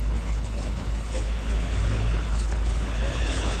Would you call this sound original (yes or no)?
no